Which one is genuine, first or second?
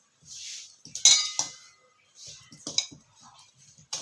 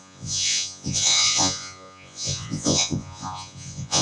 first